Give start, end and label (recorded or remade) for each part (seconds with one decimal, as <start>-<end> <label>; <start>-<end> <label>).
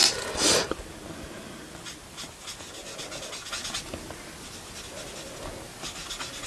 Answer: 0.0-6.5 recorded